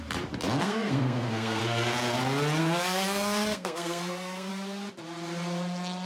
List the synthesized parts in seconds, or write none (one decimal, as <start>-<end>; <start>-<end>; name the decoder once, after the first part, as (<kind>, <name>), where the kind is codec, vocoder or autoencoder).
0.6-1.6 (codec, SNAC); 2.6-4.5